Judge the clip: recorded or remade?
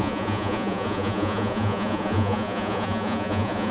remade